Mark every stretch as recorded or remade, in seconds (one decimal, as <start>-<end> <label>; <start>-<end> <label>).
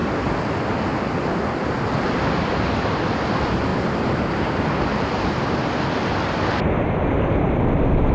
0.0-3.7 recorded; 3.7-4.4 remade; 4.4-4.9 recorded; 4.9-5.7 remade; 5.7-8.1 recorded